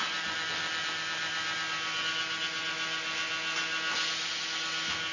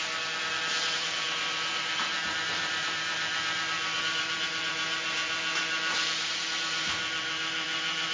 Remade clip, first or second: second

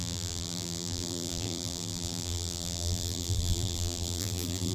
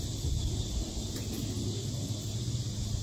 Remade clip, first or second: first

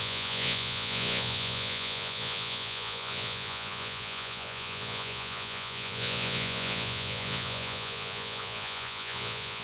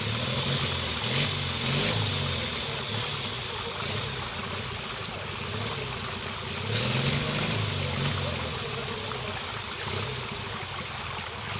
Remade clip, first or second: first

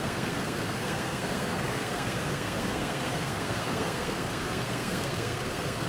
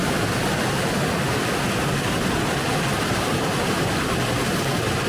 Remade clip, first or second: first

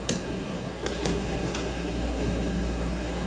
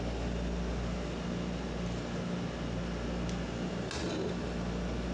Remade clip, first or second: first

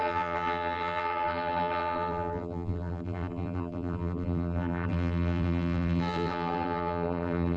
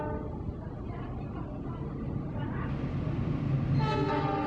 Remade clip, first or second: first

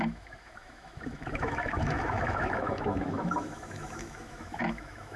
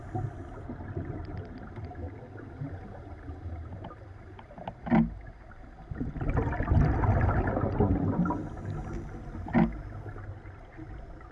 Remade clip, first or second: first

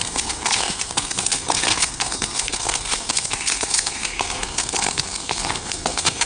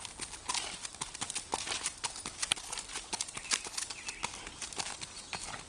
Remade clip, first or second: first